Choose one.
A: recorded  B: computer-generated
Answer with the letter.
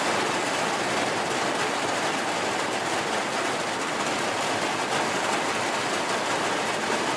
A